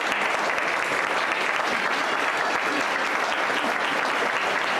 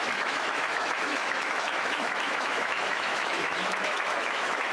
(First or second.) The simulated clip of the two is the second